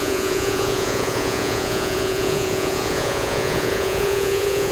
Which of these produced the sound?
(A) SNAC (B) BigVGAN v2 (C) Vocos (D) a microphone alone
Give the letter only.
C